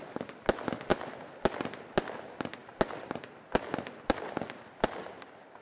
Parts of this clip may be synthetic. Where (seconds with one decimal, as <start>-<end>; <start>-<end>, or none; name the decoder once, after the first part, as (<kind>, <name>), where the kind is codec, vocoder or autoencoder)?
none